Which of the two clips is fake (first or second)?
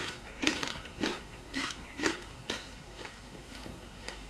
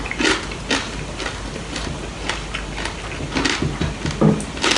first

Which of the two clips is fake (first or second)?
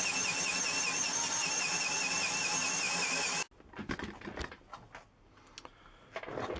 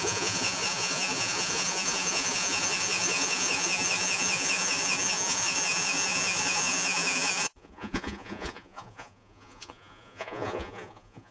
second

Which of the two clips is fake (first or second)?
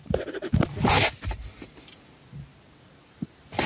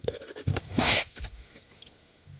second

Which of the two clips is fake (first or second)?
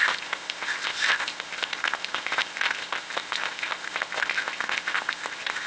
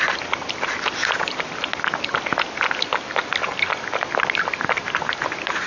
first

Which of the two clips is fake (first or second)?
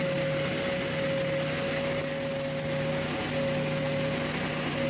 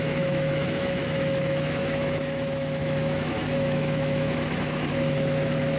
second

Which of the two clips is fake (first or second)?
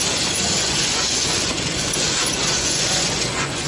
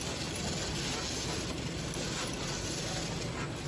first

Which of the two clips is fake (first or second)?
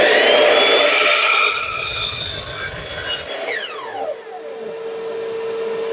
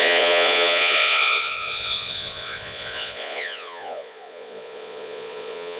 second